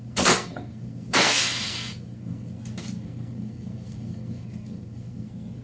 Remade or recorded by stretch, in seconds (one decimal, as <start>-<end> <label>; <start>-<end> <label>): 0.0-5.6 remade